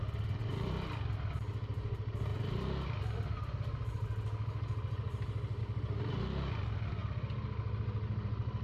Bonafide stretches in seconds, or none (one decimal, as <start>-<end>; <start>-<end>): 0.0-8.6